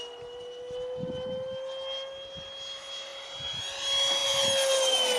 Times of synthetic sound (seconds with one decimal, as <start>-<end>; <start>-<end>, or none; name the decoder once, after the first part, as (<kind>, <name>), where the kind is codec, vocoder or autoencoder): none